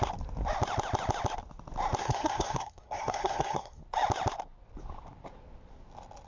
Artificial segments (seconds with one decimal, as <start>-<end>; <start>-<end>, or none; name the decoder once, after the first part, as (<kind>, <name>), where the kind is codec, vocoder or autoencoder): 2.0-3.8 (codec, SNAC)